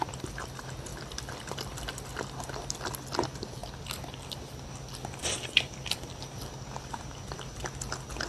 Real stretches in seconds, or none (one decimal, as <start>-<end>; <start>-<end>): 0.0-0.9; 1.9-3.6; 4.5-5.2; 7.6-8.3